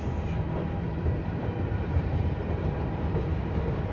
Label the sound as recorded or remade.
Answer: remade